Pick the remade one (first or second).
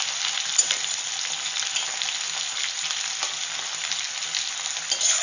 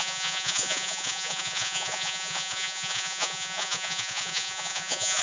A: second